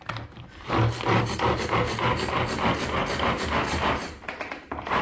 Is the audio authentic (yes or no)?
yes